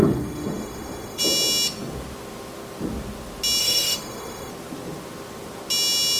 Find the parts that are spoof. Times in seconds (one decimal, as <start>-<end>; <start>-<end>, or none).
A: 0.0-1.2; 3.6-4.5